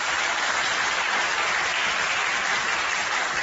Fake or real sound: real